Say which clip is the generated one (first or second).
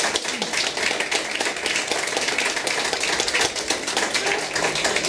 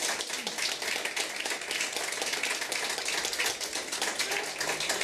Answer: first